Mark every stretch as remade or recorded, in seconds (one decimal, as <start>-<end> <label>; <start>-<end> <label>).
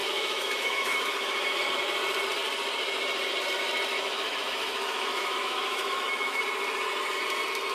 0.0-1.6 remade; 1.6-3.9 recorded; 3.9-6.4 remade; 6.4-7.7 recorded